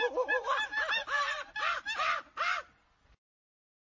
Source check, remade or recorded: recorded